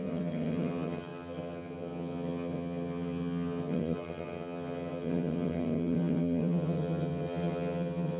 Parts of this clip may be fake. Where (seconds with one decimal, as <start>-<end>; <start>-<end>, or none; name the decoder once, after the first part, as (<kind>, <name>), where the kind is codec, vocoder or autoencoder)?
0.0-8.2 (vocoder, HiFi-GAN)